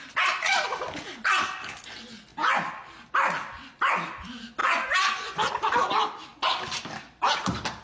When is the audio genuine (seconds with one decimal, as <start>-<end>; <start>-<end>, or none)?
0.0-4.6; 5.5-7.8

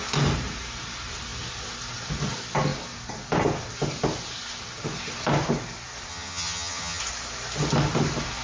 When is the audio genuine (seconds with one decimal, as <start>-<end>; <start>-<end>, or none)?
0.0-6.1; 7.0-8.4

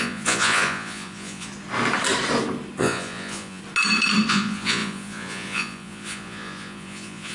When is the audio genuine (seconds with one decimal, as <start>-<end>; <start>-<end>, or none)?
1.5-2.8; 3.6-4.3

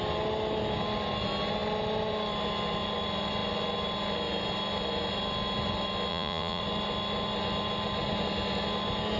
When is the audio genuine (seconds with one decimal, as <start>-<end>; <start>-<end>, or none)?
0.0-6.1; 6.6-9.2

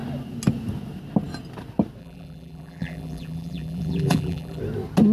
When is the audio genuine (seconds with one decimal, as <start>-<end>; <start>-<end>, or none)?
0.0-2.0; 4.6-5.1

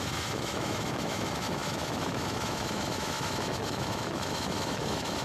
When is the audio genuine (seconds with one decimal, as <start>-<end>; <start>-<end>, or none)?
none